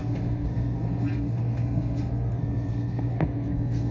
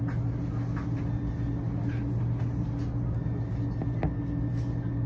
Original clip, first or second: second